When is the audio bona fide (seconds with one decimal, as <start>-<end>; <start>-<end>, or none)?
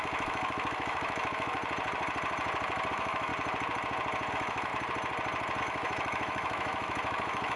1.6-2.9; 3.3-4.3; 4.7-5.6